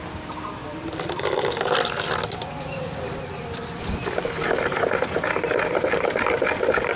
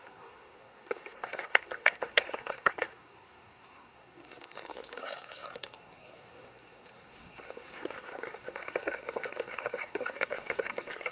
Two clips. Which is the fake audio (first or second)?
second